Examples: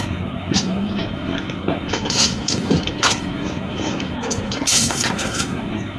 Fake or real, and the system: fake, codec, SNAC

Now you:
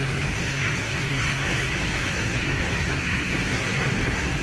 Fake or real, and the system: fake, codec, SNAC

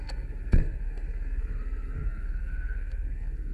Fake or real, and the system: fake, codec, SNAC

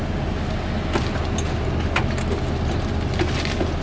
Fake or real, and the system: real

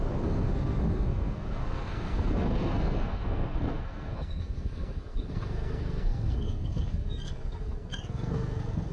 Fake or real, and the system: fake, codec, SNAC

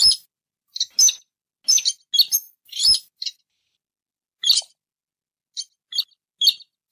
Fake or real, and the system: real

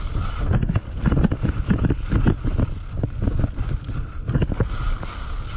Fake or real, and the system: real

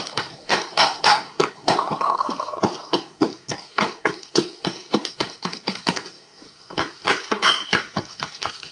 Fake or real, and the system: fake, codec, SNAC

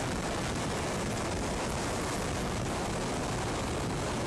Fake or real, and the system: real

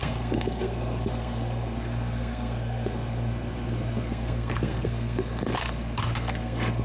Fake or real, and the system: fake, codec, SNAC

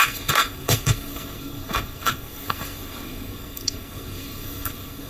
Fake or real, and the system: fake, codec, SNAC